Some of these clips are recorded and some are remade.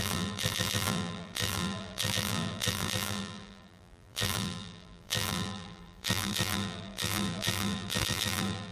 remade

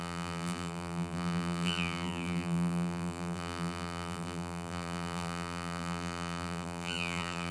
remade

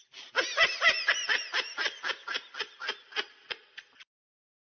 remade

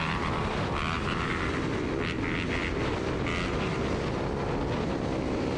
recorded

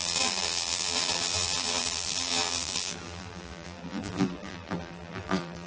remade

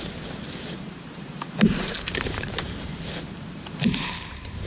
remade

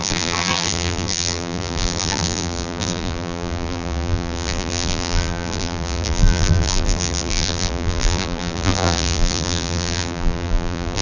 remade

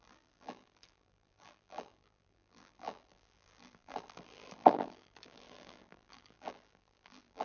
remade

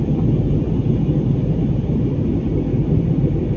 recorded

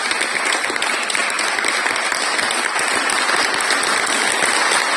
recorded